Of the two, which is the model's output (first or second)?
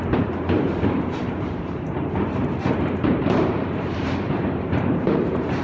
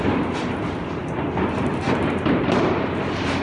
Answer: first